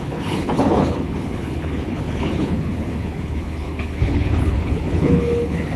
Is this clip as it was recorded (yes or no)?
no